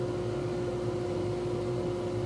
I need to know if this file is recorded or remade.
recorded